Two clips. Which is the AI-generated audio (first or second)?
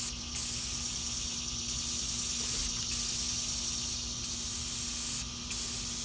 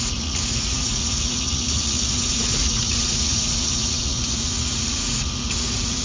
second